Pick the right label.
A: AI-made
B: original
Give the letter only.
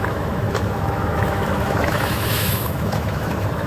A